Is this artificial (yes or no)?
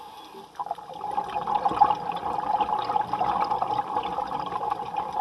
no